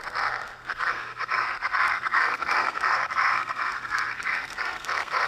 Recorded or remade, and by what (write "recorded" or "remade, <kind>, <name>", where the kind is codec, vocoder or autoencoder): remade, codec, SNAC